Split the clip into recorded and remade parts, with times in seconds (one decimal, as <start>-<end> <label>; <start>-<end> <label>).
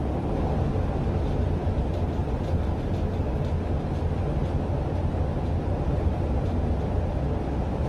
0.0-7.9 recorded